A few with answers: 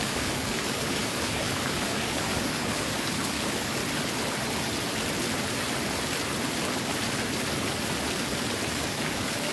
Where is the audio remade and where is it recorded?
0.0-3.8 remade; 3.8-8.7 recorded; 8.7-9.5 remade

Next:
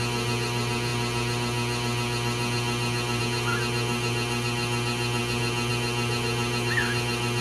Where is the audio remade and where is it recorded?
0.0-7.4 recorded

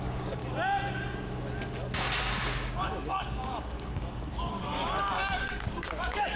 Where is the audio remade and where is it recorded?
0.0-0.4 remade; 0.4-2.2 recorded; 2.2-6.4 remade